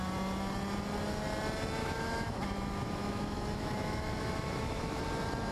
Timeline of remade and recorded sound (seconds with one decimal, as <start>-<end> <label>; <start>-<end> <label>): 0.0-1.8 recorded; 1.8-5.0 remade; 5.0-5.5 recorded